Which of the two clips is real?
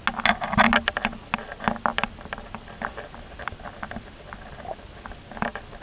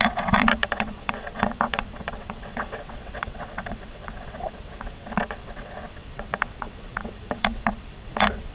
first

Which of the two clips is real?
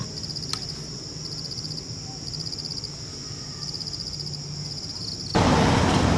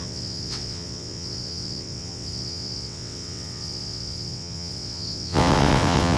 first